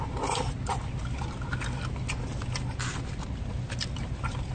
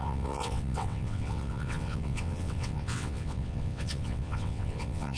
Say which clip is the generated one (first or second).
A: second